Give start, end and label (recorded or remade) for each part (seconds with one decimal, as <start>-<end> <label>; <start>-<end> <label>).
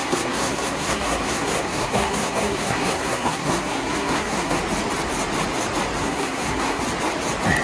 0.0-4.6 remade; 4.6-6.0 recorded; 6.0-6.8 remade; 6.8-7.6 recorded